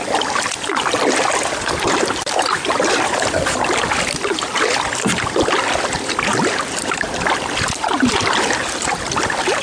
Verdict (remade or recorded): recorded